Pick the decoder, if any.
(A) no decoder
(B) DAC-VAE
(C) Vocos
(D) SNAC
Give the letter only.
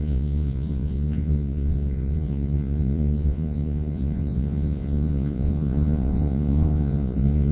C